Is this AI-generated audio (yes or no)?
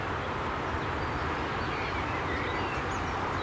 no